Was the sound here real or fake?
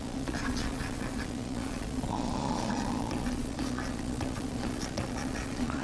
fake